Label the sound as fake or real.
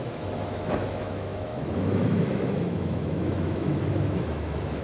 fake